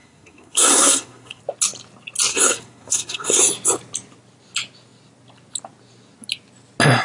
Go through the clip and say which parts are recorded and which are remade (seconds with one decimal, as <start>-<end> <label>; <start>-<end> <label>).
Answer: 0.0-1.4 remade; 1.4-2.3 recorded; 2.3-3.4 remade; 3.4-7.0 recorded